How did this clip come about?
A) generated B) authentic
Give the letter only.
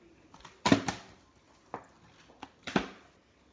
B